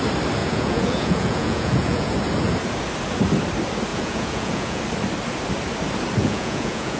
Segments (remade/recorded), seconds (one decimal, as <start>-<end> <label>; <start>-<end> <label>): 0.0-0.4 recorded; 0.4-2.1 remade; 2.1-3.9 recorded; 3.9-4.8 remade; 4.8-6.2 recorded; 6.2-7.0 remade